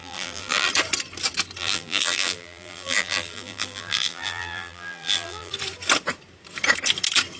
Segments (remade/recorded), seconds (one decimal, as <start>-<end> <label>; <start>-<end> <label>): 0.0-0.7 remade; 0.7-1.6 recorded; 1.6-5.5 remade; 5.5-7.4 recorded